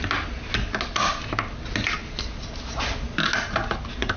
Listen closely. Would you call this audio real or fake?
real